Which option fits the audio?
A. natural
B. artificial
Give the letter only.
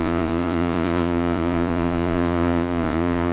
B